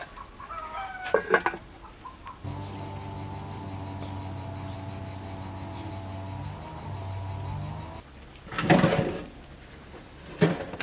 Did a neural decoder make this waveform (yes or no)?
no